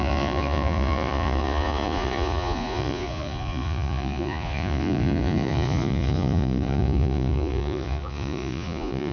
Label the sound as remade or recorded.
remade